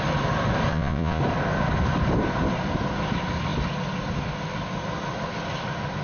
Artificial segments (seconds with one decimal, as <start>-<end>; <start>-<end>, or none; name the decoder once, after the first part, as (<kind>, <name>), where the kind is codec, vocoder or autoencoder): 0.7-1.2 (vocoder, Vocos)